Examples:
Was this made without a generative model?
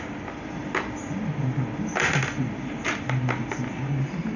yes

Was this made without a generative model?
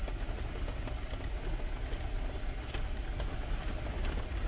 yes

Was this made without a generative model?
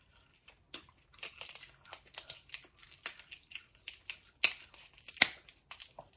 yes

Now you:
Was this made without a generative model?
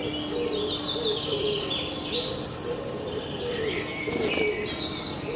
yes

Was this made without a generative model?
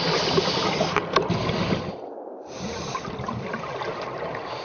no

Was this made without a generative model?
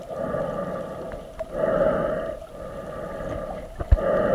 yes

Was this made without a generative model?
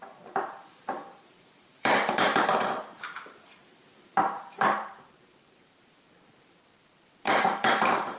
no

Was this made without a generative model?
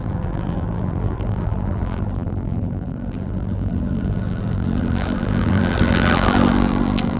no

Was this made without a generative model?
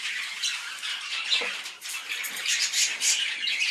no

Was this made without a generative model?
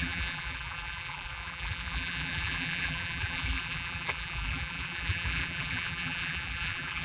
no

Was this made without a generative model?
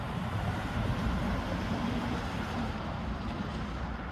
no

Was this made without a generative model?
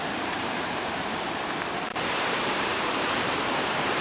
no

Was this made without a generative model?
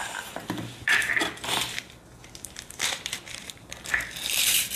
no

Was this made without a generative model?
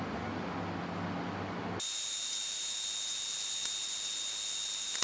yes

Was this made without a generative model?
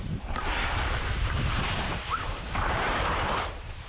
no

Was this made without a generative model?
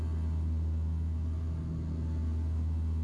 yes